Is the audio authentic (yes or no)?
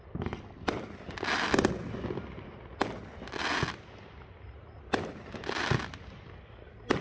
yes